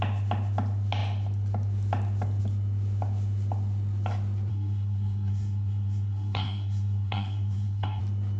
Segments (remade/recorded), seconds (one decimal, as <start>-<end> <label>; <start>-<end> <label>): 0.0-4.5 recorded; 4.5-8.0 remade; 8.0-8.4 recorded